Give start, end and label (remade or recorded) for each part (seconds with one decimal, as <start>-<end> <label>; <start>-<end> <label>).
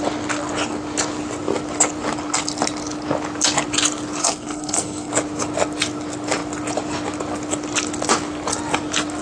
0.0-4.2 recorded; 4.2-5.1 remade; 5.1-9.2 recorded